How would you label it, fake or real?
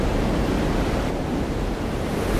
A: fake